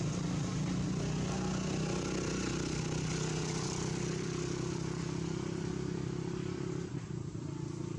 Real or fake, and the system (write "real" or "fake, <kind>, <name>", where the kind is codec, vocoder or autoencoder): real